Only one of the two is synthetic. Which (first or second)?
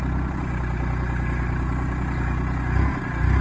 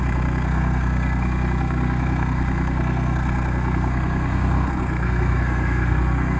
second